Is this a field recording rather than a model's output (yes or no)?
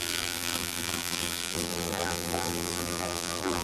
no